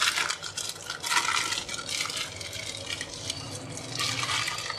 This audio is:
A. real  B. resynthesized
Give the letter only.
A